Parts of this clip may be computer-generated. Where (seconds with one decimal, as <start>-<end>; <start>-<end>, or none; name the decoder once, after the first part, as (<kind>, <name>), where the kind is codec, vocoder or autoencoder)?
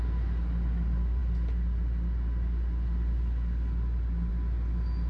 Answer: none